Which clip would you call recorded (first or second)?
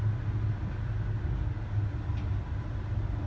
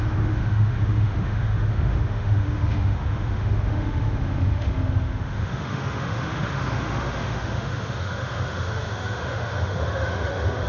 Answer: first